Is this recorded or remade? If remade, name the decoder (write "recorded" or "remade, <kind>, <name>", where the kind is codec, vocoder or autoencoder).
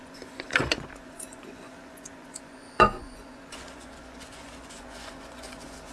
remade, vocoder, Vocos